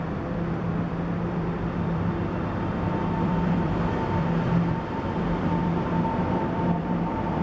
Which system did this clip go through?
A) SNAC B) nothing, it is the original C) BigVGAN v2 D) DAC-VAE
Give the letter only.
C